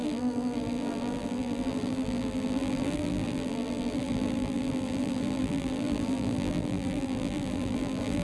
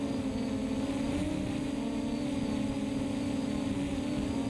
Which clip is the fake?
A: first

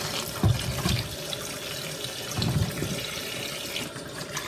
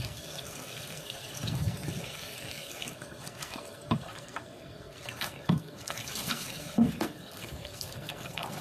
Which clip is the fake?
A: second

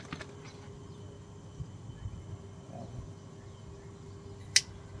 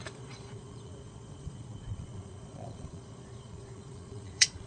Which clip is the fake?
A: second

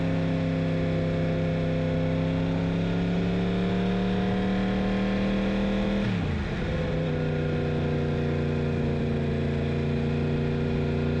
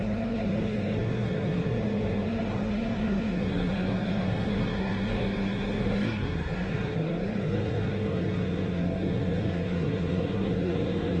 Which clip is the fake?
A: second